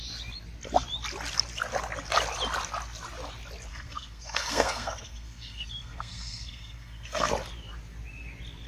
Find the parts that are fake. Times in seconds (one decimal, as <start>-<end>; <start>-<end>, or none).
3.7-7.3